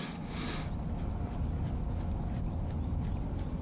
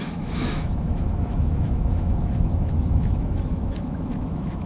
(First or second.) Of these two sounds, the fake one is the second